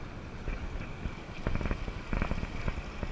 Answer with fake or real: real